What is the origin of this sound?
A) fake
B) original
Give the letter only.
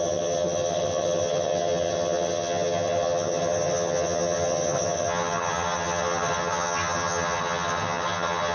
A